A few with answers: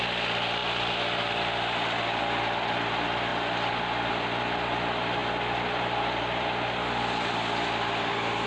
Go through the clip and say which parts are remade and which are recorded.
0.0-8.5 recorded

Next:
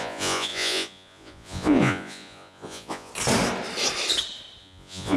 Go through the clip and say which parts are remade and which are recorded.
0.0-3.1 remade; 3.1-4.6 recorded; 4.6-5.2 remade

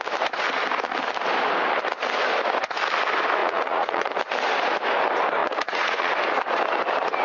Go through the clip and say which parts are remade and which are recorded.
0.0-3.4 recorded; 3.4-4.1 remade; 4.1-5.4 recorded; 5.4-6.1 remade; 6.1-7.2 recorded

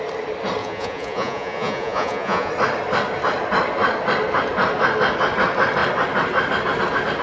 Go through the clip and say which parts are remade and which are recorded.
0.0-0.6 recorded; 0.6-2.5 remade; 2.5-7.2 recorded

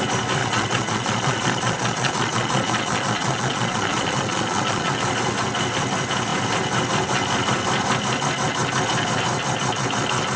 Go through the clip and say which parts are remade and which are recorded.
0.0-0.4 recorded; 0.4-4.9 remade; 4.9-10.4 recorded

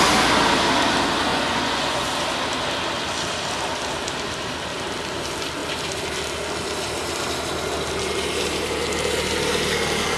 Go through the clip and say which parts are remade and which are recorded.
0.0-1.3 recorded; 1.3-2.1 remade; 2.1-10.2 recorded